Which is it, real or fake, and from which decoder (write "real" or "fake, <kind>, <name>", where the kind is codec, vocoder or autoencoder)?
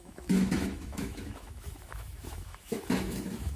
fake, autoencoder, DAC-VAE